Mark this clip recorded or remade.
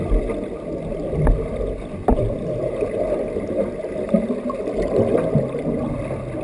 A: recorded